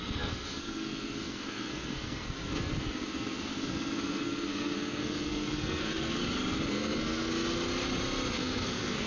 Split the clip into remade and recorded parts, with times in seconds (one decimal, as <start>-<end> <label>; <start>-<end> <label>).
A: 0.0-6.2 remade; 6.2-6.7 recorded; 6.7-7.3 remade; 7.3-8.3 recorded; 8.3-9.1 remade